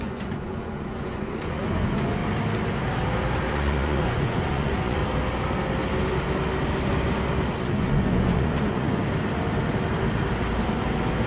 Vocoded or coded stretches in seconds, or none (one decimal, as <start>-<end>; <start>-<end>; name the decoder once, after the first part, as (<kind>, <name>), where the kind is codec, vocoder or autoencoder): 0.0-2.2 (vocoder, Vocos); 3.5-5.0; 7.6-9.0